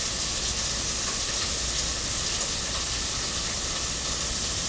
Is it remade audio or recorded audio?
recorded